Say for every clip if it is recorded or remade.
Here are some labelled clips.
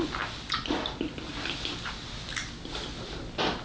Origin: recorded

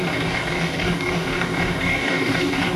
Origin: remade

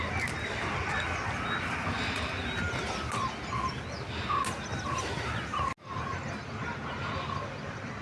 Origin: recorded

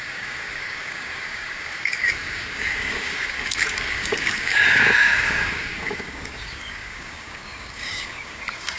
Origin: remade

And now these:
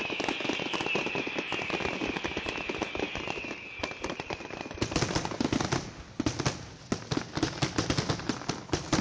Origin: recorded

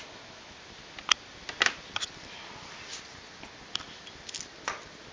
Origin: recorded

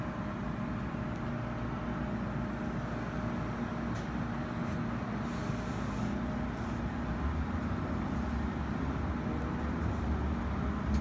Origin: recorded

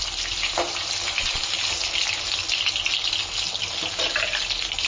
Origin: recorded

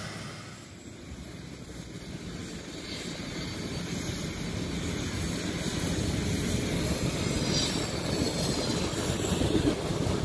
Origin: recorded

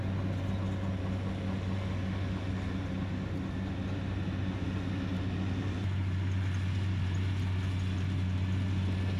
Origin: recorded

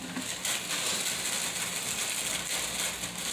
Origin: recorded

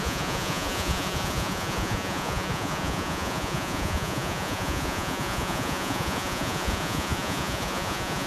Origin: remade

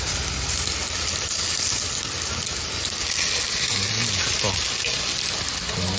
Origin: recorded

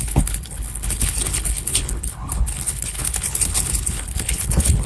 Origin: remade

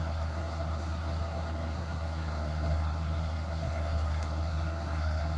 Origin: remade